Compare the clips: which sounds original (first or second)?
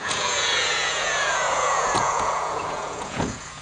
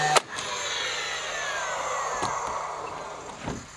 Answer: second